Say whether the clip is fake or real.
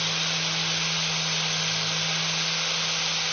real